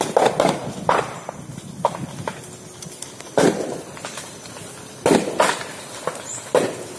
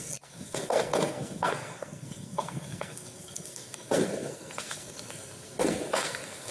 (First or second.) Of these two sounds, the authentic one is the first